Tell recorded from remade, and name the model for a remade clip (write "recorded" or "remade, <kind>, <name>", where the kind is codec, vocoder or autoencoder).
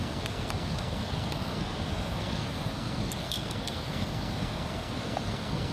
remade, codec, SNAC